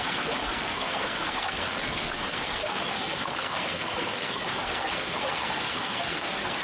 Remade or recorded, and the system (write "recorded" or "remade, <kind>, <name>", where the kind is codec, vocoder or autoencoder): remade, codec, SNAC